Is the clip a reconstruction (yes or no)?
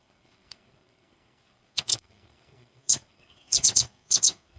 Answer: yes